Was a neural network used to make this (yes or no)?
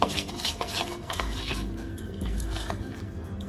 yes